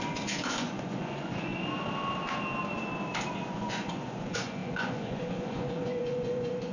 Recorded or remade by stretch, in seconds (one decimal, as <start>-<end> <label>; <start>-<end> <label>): 0.0-1.5 remade; 1.5-3.3 recorded; 3.3-6.7 remade